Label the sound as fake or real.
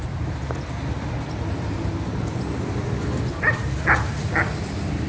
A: real